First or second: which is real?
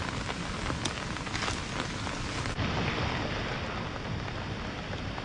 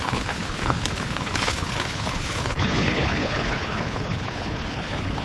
first